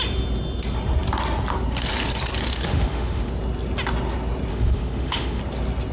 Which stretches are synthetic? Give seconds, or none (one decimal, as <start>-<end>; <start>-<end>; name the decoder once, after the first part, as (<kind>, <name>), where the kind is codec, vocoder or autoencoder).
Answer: 2.7-3.3 (autoencoder, DAC-VAE); 4.5-5.4